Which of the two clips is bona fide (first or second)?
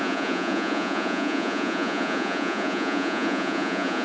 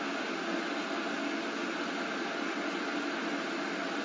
second